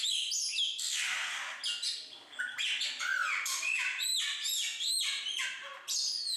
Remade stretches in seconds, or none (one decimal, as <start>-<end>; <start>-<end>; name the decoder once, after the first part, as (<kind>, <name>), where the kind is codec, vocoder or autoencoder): 3.2-4.2 (vocoder, BigVGAN v2)